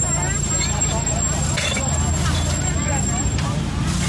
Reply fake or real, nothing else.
real